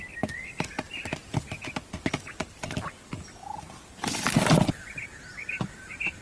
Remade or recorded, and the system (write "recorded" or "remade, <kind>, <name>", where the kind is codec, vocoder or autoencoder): recorded